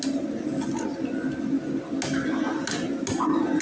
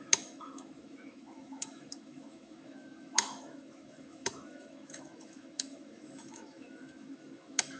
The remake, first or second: second